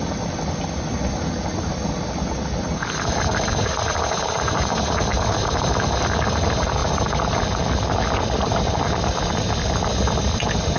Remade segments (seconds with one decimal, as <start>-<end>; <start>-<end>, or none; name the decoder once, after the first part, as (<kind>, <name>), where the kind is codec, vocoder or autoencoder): 3.3-4.8 (vocoder, BigVGAN v2)